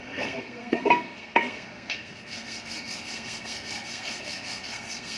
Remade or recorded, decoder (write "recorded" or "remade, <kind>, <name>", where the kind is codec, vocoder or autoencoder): remade, codec, SNAC